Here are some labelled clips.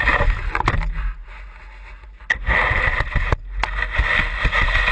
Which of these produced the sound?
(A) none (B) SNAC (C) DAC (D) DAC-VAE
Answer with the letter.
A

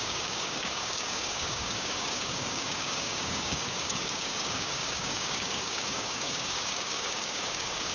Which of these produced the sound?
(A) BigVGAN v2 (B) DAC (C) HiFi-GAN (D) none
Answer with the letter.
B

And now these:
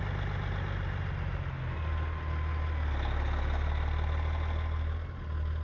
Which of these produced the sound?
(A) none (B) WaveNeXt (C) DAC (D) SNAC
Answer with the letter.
A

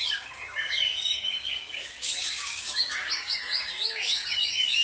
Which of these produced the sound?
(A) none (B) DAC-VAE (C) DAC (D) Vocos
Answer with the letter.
C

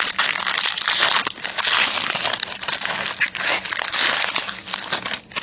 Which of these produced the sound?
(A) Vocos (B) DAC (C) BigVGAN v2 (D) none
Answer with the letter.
D